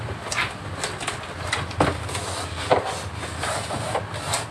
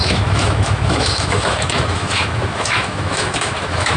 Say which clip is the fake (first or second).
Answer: second